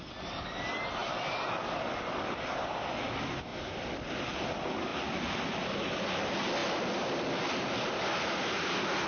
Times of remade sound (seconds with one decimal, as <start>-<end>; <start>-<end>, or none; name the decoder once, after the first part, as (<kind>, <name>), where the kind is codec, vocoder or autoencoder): 3.5-4.2 (vocoder, BigVGAN v2); 4.9-5.7; 6.6-7.5